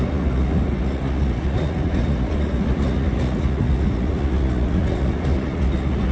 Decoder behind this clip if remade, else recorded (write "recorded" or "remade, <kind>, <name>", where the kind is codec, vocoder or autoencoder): remade, vocoder, Vocos